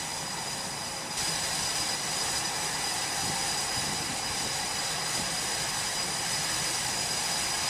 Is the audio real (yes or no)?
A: yes